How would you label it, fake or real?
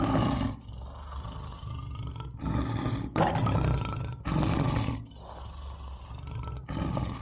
real